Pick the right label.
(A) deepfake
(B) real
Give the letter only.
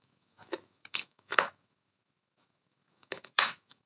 A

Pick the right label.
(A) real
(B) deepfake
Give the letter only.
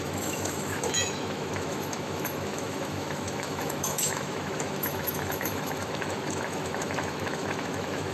B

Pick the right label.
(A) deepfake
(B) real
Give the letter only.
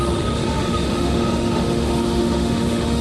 A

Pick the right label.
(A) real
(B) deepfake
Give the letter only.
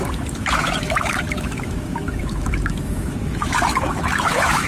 B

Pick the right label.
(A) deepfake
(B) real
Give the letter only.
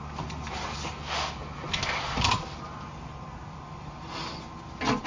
B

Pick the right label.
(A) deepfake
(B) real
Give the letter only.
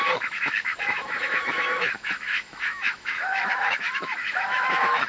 A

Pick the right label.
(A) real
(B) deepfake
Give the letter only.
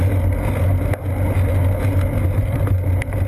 A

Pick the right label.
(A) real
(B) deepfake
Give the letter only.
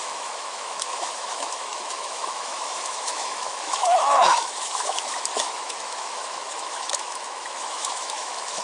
B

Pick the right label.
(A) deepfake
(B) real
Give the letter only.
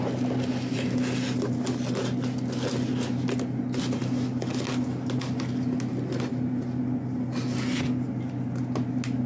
B